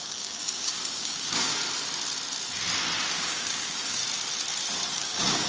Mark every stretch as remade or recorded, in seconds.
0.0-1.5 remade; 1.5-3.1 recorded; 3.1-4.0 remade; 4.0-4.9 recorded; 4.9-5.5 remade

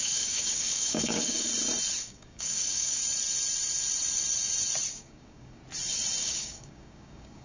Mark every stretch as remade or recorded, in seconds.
0.0-1.5 remade; 1.5-2.0 recorded; 2.0-3.0 remade; 3.0-4.9 recorded; 4.9-5.6 remade; 5.6-6.2 recorded; 6.2-7.4 remade

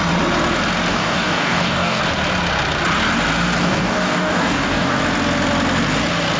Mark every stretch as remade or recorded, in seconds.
0.0-0.9 recorded; 0.9-2.0 remade; 2.0-3.6 recorded; 3.6-5.0 remade; 5.0-6.4 recorded

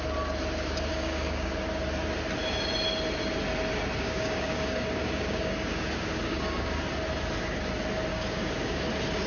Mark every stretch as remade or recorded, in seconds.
0.0-0.9 recorded; 0.9-1.5 remade; 1.5-4.0 recorded; 4.0-6.8 remade; 6.8-8.1 recorded; 8.1-8.8 remade; 8.8-9.3 recorded

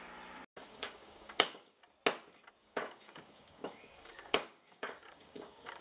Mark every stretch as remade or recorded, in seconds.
0.0-0.6 recorded; 0.6-1.8 remade; 1.8-2.6 recorded; 2.6-5.8 remade

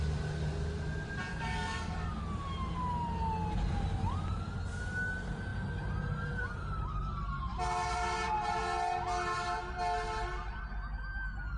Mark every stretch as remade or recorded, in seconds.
0.0-1.3 recorded; 1.3-2.2 remade; 2.2-11.6 recorded

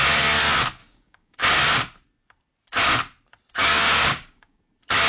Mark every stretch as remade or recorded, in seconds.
0.0-0.8 recorded; 0.8-1.6 remade; 1.6-3.6 recorded; 3.6-4.6 remade; 4.6-5.1 recorded